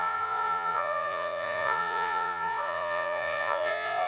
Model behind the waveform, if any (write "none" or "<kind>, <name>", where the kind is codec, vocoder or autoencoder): vocoder, Vocos